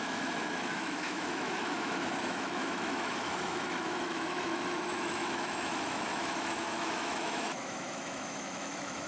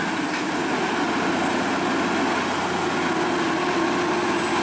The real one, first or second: second